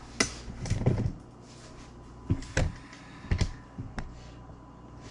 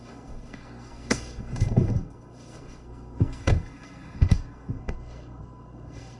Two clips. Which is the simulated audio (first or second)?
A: second